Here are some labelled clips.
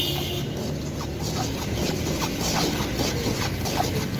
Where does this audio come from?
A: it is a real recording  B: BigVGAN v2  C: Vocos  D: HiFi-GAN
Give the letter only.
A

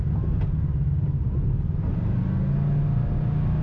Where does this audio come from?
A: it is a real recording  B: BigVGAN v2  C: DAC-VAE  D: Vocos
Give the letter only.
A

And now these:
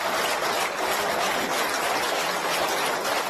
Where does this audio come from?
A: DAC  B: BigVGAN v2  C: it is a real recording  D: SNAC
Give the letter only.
C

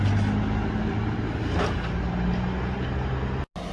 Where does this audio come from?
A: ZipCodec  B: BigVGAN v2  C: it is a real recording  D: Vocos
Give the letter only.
C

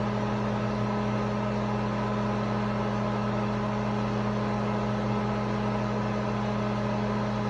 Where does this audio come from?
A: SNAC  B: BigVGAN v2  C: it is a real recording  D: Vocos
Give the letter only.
C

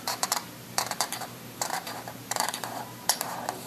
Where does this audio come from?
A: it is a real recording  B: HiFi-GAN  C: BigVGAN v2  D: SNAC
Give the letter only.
C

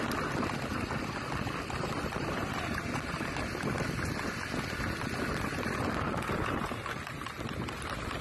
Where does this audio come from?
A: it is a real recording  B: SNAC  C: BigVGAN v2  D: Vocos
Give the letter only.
A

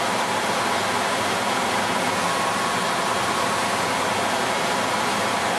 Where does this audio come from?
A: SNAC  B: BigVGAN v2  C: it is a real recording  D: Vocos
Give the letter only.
C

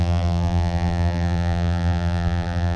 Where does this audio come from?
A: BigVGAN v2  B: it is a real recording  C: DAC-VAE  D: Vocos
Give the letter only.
A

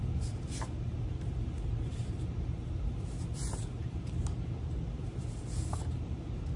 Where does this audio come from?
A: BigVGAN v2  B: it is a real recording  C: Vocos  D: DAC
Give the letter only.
A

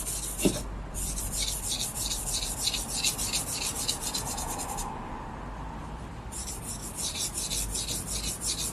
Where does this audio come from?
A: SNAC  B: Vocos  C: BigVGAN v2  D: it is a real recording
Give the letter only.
D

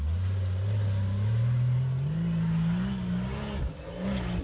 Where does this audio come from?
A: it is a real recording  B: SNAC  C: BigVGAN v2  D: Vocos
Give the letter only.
A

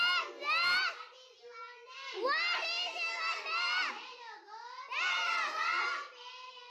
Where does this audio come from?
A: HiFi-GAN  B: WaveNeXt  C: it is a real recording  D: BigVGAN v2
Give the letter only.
C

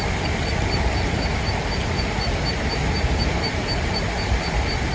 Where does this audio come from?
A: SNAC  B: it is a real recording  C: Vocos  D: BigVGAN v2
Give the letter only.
B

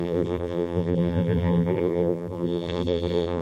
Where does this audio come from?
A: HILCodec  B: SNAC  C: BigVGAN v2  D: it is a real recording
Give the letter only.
C